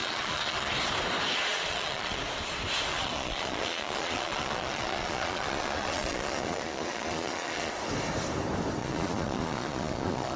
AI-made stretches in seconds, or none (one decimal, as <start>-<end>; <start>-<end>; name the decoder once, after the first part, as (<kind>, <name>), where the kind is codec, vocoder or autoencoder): 0.0-0.7 (vocoder, Vocos); 1.5-2.2; 2.9-7.7; 8.8-10.4